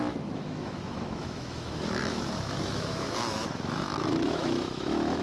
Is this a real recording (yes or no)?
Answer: no